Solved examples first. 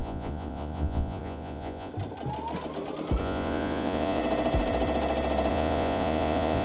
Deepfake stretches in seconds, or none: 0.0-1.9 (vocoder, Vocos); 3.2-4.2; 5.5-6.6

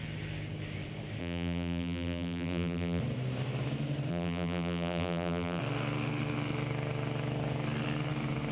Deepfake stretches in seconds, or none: 1.2-3.0 (vocoder, BigVGAN v2); 4.1-5.6

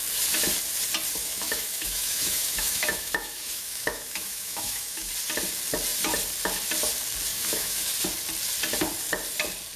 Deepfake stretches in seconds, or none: 1.2-5.1 (autoencoder, DAC-VAE); 7.3-7.9